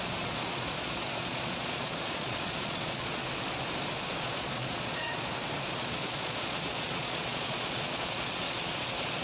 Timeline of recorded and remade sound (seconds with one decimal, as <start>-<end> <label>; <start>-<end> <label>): 0.0-3.2 remade; 3.2-4.1 recorded; 4.1-5.3 remade; 5.3-5.8 recorded; 5.8-9.2 remade